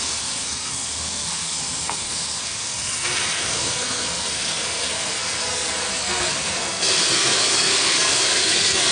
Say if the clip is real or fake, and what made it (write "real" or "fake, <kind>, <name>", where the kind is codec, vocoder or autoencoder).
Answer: fake, codec, SNAC